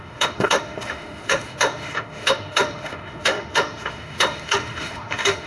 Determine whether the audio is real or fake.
fake